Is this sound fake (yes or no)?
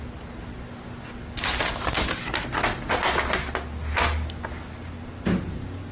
no